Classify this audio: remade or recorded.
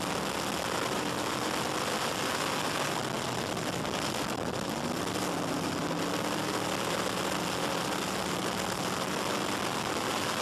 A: recorded